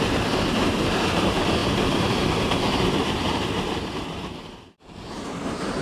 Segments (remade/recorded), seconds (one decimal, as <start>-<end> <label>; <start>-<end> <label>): 0.0-5.8 remade